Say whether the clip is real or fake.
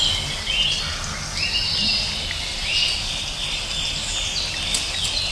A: real